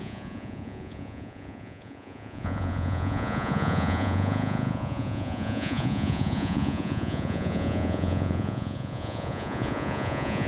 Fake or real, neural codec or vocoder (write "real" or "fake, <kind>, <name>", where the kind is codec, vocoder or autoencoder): fake, vocoder, Vocos